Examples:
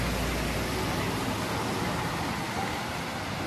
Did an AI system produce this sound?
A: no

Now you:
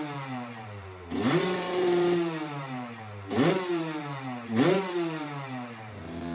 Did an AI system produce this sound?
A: yes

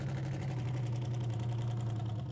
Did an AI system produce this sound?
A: yes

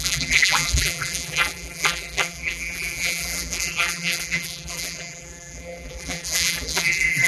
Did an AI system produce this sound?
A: yes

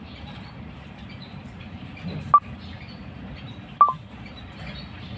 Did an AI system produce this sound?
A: no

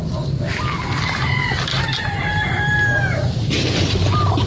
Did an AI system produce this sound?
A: no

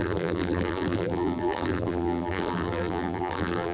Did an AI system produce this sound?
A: yes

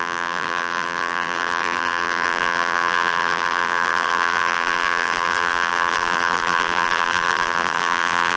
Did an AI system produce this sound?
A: yes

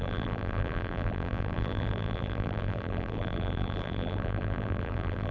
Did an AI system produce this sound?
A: yes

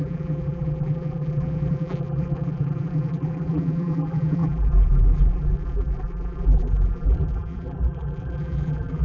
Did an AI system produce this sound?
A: yes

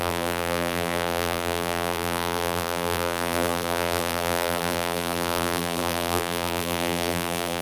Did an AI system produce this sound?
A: yes